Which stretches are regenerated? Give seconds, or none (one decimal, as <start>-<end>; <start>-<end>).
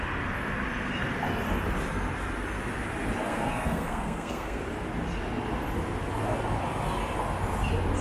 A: 3.3-4.6